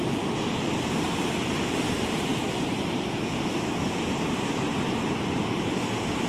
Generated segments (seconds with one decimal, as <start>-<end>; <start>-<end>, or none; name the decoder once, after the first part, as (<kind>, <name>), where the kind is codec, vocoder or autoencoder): 2.3-3.6 (vocoder, BigVGAN v2); 4.7-5.7

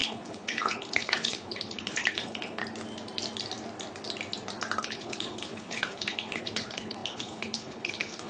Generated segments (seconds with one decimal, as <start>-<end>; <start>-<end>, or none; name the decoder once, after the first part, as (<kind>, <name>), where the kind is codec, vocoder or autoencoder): 0.0-2.6 (codec, HILCodec); 4.8-8.3

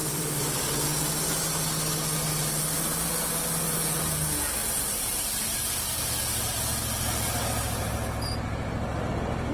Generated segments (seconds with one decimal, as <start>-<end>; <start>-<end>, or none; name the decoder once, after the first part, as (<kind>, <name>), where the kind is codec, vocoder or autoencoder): 0.0-0.6 (vocoder, BigVGAN v2); 4.6-9.1

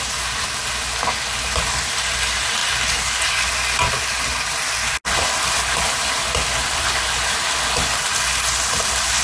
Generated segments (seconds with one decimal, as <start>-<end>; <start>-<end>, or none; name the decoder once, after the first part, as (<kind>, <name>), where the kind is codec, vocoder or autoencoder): none

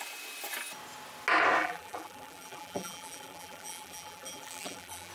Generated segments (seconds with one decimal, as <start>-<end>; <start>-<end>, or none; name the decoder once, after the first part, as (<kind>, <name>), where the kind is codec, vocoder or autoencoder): 1.6-5.1 (vocoder, BigVGAN v2)

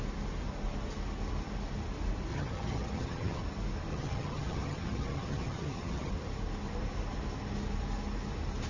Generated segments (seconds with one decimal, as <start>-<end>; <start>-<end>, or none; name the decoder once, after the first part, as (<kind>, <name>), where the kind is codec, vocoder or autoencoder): 2.3-3.4 (vocoder, HiFi-GAN); 3.9-6.1